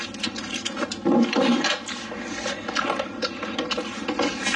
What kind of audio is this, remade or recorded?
recorded